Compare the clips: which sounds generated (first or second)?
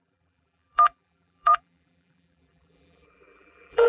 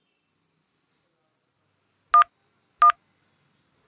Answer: first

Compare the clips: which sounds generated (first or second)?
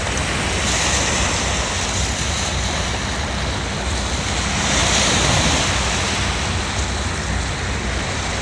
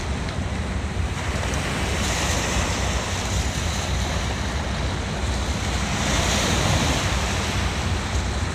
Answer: second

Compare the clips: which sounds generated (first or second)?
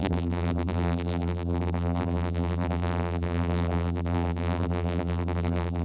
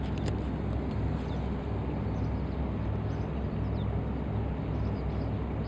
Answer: first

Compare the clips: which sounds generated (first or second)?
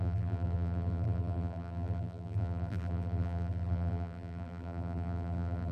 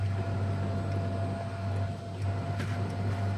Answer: first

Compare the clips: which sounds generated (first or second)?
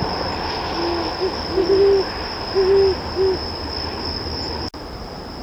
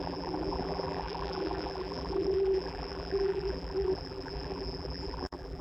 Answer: second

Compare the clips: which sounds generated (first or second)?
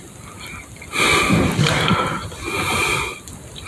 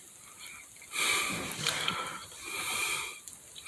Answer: second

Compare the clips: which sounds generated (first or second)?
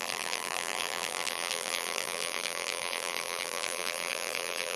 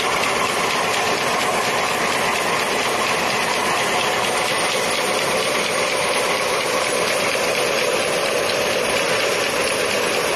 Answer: first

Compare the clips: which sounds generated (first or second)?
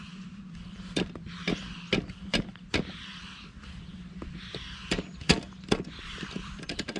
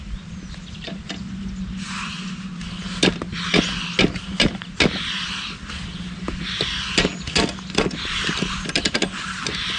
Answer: first